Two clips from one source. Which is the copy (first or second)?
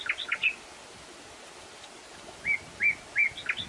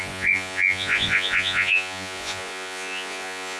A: second